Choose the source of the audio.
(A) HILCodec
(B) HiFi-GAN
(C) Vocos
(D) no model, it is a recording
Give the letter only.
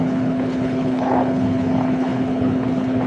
A